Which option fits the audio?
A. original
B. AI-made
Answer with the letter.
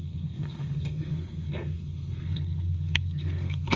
B